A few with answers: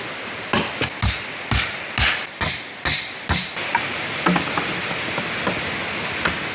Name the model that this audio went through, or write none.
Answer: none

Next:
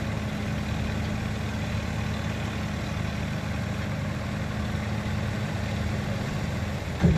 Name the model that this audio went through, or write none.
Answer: none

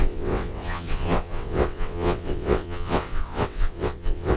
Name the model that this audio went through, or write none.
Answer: vocoder, WaveNeXt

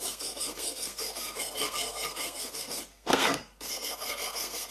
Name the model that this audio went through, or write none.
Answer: codec, SNAC